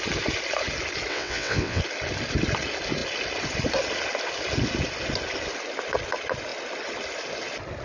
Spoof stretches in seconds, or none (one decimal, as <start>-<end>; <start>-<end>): 1.1-1.8